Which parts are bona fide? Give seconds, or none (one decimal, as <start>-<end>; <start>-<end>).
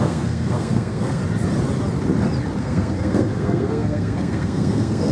1.2-2.6